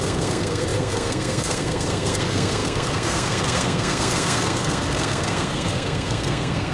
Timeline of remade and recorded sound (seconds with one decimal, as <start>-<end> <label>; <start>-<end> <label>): 0.0-6.7 remade